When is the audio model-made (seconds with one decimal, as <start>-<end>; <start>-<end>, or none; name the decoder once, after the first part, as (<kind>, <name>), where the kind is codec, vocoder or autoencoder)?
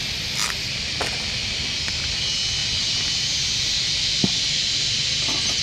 0.4-2.1 (vocoder, BigVGAN v2)